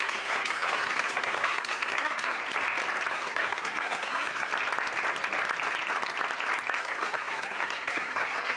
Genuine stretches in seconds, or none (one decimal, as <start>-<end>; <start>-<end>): 2.4-3.1; 4.5-6.8